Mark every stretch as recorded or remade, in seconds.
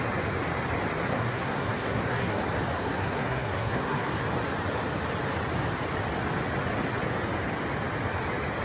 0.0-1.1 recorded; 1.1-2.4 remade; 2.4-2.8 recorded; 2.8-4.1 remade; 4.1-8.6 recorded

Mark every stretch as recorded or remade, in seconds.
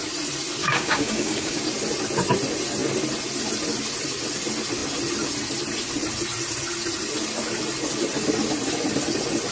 0.0-0.6 recorded; 0.6-1.6 remade; 1.6-9.5 recorded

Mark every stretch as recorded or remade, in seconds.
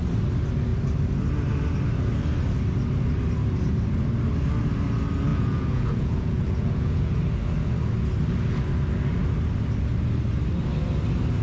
0.0-5.3 recorded; 5.3-7.2 remade; 7.2-11.4 recorded